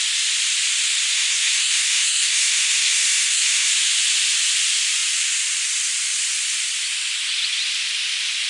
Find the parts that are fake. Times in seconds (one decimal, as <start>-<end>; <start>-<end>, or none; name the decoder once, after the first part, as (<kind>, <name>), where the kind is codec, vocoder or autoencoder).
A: 1.1-3.7 (codec, SNAC)